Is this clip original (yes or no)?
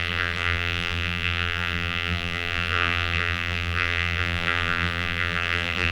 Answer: no